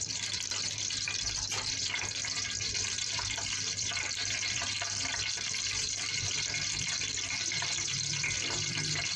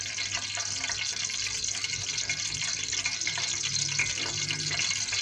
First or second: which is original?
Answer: second